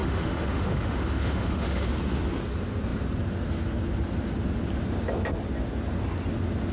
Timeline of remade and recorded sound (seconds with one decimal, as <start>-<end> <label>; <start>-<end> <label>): 0.0-1.9 remade; 1.9-6.7 recorded